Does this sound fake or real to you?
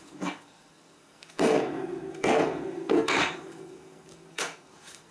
fake